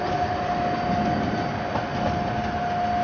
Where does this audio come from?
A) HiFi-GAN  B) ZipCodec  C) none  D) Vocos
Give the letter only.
C